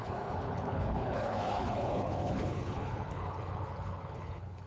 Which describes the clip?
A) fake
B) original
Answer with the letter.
A